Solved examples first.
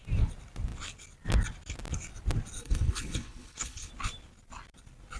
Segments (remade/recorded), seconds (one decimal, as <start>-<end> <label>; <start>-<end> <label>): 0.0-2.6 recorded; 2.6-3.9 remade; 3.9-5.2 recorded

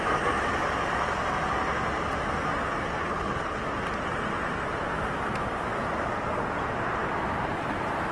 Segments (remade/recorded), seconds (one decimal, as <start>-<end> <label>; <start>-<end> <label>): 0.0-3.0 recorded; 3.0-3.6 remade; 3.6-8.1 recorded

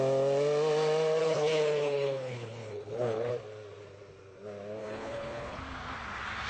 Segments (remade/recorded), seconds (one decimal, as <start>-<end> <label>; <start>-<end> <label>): 0.0-1.2 recorded; 1.2-3.3 remade; 3.3-4.8 recorded; 4.8-5.6 remade; 5.6-6.5 recorded

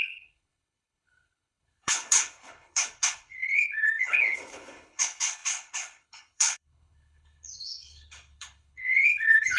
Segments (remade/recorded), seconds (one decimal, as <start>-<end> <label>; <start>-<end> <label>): 0.0-9.6 remade

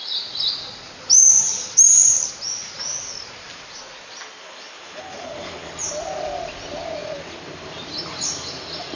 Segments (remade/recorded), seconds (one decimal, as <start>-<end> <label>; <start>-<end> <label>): 0.0-4.4 recorded; 4.4-5.7 remade; 5.7-9.0 recorded